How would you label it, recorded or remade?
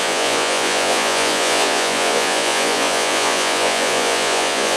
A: remade